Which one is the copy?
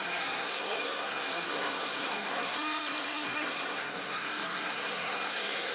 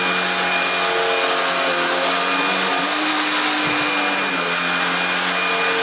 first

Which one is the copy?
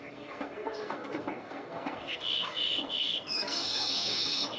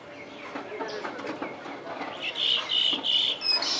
first